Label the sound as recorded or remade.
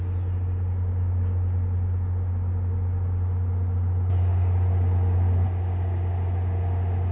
recorded